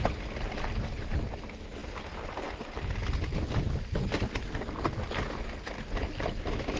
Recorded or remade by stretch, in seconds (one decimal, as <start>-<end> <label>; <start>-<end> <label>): 0.0-3.0 recorded; 3.0-4.6 remade; 4.6-6.8 recorded

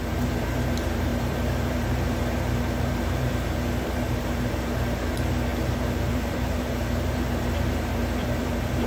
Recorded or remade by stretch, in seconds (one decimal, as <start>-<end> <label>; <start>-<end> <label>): 0.0-8.9 remade

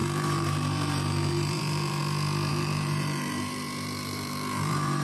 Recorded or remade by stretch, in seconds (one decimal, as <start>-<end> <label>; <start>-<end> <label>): 0.0-2.0 remade; 2.0-2.5 recorded; 2.5-5.0 remade

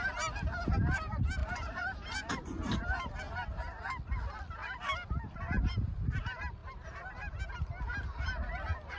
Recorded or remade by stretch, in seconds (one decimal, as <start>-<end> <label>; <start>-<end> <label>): 0.0-1.4 recorded; 1.4-2.8 remade; 2.8-4.6 recorded; 4.6-5.4 remade; 5.4-6.6 recorded; 6.6-7.4 remade; 7.4-9.0 recorded